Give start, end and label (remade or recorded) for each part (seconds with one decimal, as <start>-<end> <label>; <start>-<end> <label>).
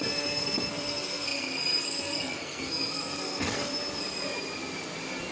0.0-3.7 remade; 3.7-5.3 recorded